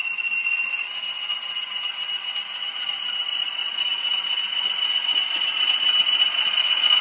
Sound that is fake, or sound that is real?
real